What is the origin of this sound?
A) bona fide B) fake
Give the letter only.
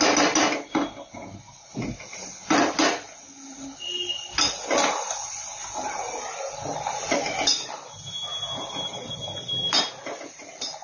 A